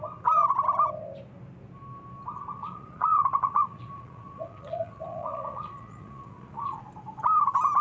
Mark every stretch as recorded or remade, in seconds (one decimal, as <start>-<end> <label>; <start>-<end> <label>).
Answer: 0.0-2.6 recorded; 2.6-6.8 remade; 6.8-7.8 recorded